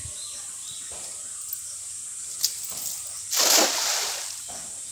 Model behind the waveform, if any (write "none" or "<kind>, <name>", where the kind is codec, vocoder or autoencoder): none